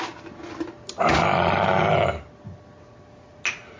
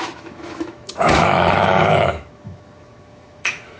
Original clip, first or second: first